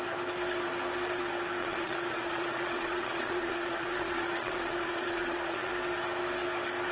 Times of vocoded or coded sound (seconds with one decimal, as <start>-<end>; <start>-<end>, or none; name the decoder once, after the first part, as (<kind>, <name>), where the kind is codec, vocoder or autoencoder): 1.6-5.7 (vocoder, Vocos)